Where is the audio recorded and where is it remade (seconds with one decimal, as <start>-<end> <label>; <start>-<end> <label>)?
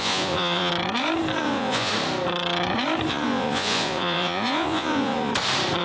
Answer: 0.0-0.7 remade; 0.7-1.4 recorded; 1.4-1.9 remade; 1.9-3.1 recorded; 3.1-5.3 remade; 5.3-5.8 recorded